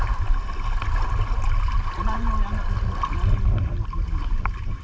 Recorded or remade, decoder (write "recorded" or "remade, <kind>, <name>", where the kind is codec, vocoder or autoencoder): recorded